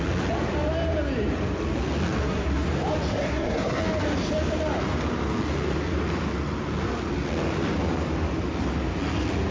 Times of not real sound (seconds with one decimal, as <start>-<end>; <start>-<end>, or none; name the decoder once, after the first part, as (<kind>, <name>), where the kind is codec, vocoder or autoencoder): 2.2-2.7 (codec, SNAC); 3.1-3.8